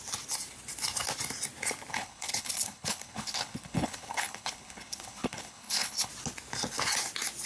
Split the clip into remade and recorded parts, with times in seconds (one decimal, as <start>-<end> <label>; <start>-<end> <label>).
0.0-1.9 recorded; 1.9-6.1 remade; 6.1-7.5 recorded